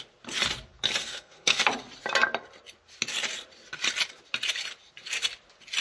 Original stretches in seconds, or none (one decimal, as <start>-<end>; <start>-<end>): 0.0-1.0; 1.6-5.8